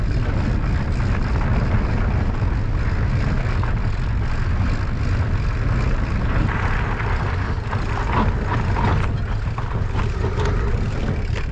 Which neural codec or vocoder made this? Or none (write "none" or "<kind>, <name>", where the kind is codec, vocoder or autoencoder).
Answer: none